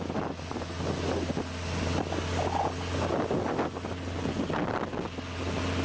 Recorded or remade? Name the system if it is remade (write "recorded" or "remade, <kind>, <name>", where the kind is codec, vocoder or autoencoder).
recorded